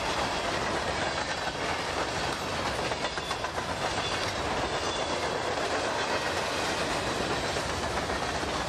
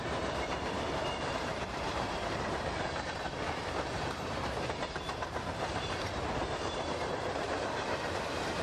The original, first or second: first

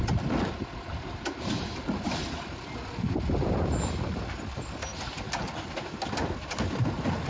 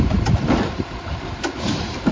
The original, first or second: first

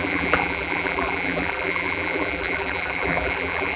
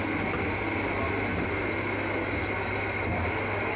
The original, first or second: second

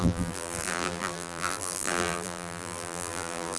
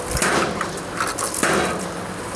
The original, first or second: second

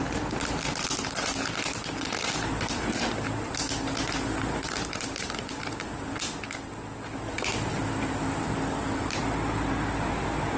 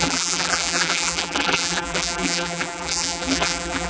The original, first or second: first